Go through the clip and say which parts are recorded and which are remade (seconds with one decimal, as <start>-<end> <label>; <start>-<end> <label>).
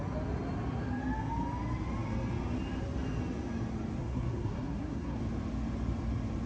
0.0-4.0 recorded; 4.0-5.2 remade; 5.2-6.5 recorded